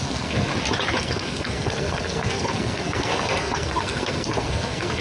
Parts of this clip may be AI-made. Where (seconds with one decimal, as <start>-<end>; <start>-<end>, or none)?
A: 0.0-0.5; 1.0-5.0